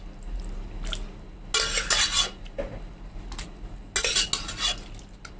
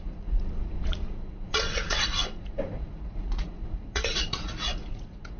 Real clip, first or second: first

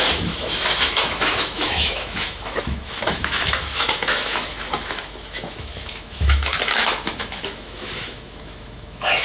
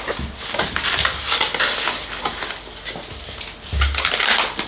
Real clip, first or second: second